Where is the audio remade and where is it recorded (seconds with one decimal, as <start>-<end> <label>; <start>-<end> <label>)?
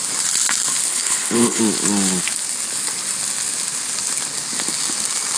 0.0-0.9 recorded; 0.9-1.6 remade; 1.6-5.4 recorded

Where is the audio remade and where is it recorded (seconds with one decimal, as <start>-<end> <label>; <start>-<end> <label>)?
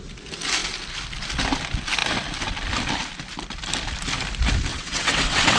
0.0-4.7 recorded; 4.7-5.6 remade